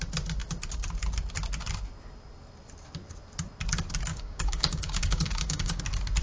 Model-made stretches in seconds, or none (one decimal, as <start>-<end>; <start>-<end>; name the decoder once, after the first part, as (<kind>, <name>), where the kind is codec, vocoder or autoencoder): 4.1-5.8 (codec, DAC)

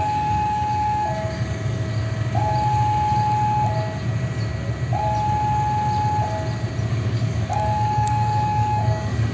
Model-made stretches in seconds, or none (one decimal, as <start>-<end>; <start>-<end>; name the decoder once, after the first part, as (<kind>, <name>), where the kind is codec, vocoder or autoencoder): 0.0-1.9 (codec, DAC); 6.9-9.3